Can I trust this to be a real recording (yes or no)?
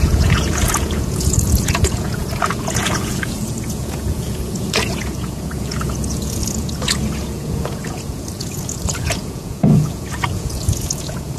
no